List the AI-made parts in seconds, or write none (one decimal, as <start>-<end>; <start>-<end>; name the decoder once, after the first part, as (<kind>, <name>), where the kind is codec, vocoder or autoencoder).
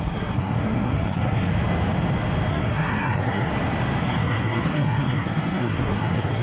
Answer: 0.0-1.5 (codec, SNAC); 2.5-3.5; 4.0-6.4